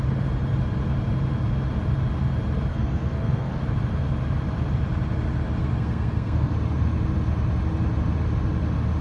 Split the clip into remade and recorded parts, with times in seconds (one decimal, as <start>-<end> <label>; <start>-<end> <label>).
0.0-2.7 recorded; 2.7-3.6 remade; 3.6-5.6 recorded; 5.6-6.5 remade; 6.5-9.0 recorded

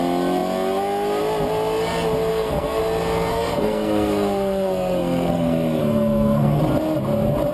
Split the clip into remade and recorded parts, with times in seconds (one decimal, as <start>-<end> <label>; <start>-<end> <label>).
0.0-2.3 recorded; 2.3-2.8 remade; 2.8-3.3 recorded; 3.3-6.6 remade; 6.6-7.5 recorded

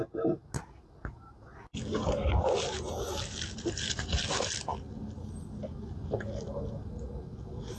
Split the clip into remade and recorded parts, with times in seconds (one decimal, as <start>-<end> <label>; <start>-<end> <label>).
0.0-7.8 recorded

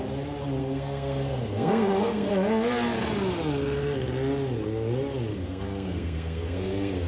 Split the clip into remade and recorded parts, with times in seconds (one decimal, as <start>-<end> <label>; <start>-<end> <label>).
0.0-0.6 recorded; 0.6-2.3 remade; 2.3-5.3 recorded; 5.3-7.1 remade

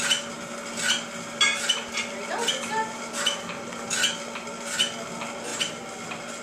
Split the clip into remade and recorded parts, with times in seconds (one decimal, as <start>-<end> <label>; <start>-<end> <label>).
0.0-6.4 recorded

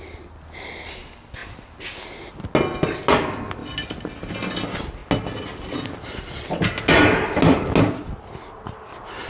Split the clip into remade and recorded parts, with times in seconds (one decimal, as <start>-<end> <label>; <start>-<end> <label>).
0.0-9.3 recorded

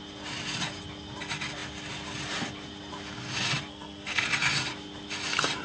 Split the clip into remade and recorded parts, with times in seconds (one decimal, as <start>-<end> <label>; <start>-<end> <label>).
0.0-3.7 recorded; 3.7-4.2 remade; 4.2-5.6 recorded